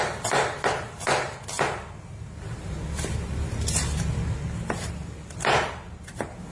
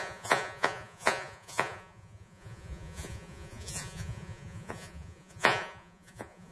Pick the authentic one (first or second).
first